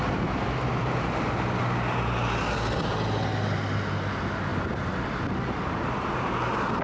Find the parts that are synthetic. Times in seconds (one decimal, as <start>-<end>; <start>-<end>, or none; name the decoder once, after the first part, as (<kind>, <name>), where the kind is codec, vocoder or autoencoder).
none

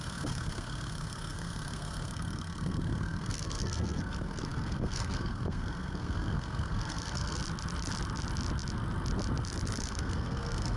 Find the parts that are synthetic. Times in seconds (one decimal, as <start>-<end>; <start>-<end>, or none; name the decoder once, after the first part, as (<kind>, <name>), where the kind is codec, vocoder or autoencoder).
0.0-7.4 (codec, SNAC); 9.8-10.8

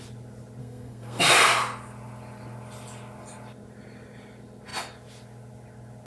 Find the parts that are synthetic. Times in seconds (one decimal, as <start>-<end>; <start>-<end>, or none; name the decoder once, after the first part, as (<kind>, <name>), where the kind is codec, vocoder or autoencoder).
0.6-1.2 (codec, SNAC)

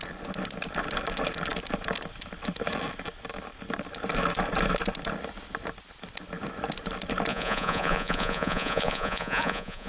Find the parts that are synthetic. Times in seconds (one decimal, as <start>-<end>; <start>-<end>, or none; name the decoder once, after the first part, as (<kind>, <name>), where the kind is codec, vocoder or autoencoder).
7.3-9.9 (vocoder, Vocos)

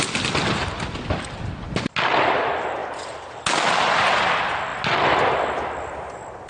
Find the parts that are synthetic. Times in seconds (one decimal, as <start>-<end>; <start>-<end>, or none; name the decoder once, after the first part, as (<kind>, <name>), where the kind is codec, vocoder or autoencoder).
none